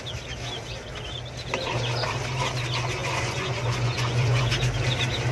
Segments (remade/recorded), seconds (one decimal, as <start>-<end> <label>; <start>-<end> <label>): 0.0-3.0 recorded; 3.0-4.5 remade; 4.5-5.3 recorded

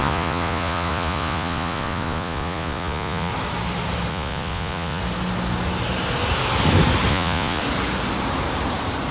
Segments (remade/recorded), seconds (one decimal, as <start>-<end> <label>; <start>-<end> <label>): 0.0-3.3 remade; 3.3-4.1 recorded; 4.1-5.0 remade; 5.0-7.1 recorded; 7.1-7.6 remade; 7.6-9.1 recorded

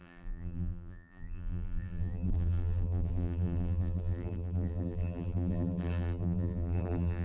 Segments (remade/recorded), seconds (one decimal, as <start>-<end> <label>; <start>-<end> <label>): 0.0-7.2 remade

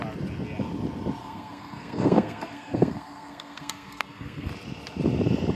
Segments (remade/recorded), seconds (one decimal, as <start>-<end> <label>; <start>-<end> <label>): 0.0-1.2 recorded; 1.2-4.5 remade; 4.5-5.5 recorded

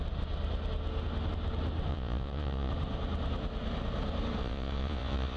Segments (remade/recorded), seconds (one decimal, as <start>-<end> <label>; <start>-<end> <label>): 0.0-1.9 recorded; 1.9-2.7 remade; 2.7-4.4 recorded; 4.4-5.4 remade

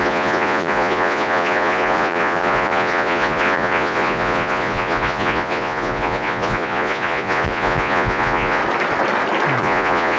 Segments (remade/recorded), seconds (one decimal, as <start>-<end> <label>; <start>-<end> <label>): 0.0-8.6 remade; 8.6-9.6 recorded; 9.6-10.2 remade

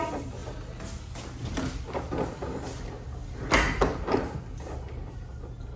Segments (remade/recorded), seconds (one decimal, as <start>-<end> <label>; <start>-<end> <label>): 0.0-5.8 recorded